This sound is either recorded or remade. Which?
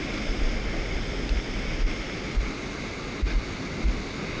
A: recorded